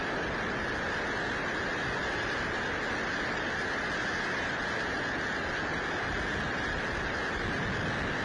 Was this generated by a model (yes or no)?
no